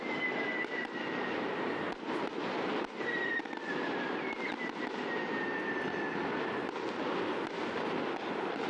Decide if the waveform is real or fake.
real